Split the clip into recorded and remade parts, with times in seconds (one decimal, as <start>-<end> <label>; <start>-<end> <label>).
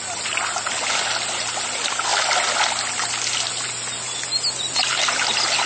0.0-5.7 recorded